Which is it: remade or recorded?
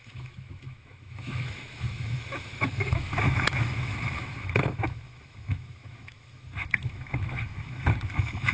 remade